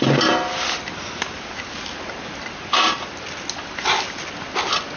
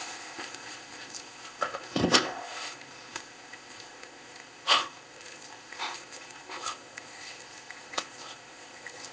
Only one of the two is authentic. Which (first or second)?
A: first